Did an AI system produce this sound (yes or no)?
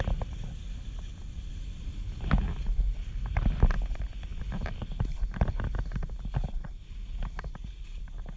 no